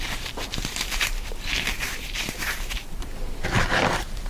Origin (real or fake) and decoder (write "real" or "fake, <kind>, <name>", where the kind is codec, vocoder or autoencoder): fake, vocoder, BigVGAN v2